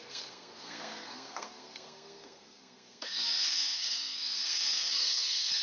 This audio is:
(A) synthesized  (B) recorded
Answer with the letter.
A